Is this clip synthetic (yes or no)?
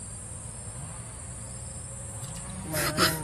no